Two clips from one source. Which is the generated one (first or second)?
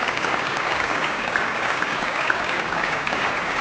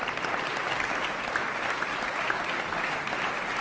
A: first